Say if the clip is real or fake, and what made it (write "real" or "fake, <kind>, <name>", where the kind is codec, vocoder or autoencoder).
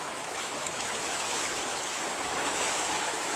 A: fake, autoencoder, DAC-VAE